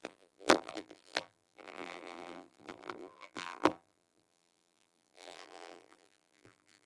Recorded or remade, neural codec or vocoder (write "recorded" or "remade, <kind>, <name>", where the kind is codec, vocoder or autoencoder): remade, vocoder, BigVGAN v2